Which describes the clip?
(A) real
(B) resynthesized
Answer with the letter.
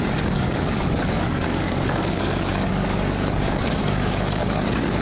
B